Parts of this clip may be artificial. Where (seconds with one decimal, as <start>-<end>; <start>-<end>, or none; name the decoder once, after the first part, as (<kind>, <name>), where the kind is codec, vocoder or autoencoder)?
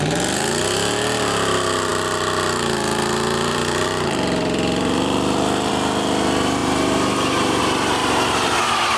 1.9-5.7 (vocoder, BigVGAN v2); 6.6-7.6; 8.0-8.6